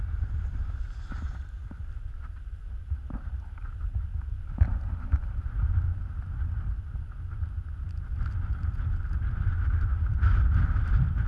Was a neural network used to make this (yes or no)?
no